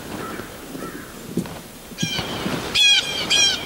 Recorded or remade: remade